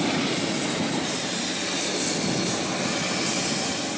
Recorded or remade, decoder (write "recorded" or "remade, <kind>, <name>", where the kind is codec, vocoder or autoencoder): recorded